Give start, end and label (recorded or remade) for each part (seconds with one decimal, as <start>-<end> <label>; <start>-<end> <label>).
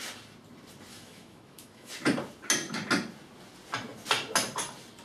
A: 0.0-0.9 recorded; 0.9-1.9 remade; 1.9-5.0 recorded